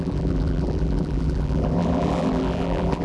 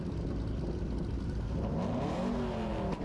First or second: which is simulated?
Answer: first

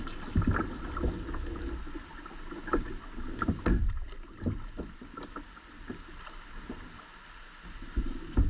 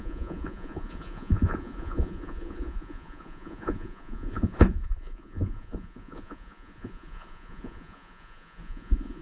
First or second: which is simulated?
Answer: second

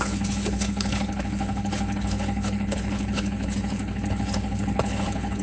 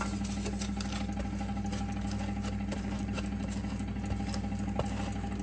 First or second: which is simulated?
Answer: first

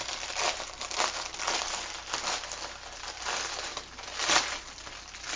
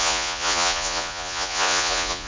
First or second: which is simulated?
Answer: second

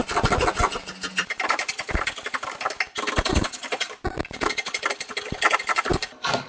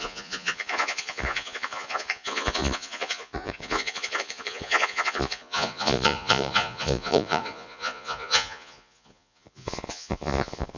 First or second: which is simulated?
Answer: second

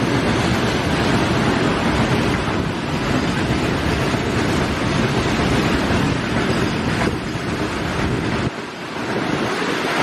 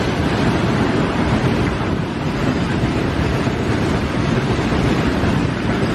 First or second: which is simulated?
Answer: second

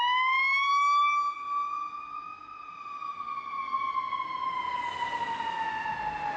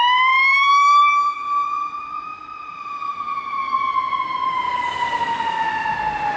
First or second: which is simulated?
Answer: second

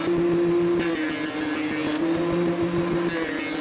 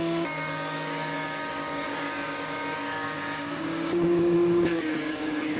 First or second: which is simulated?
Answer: second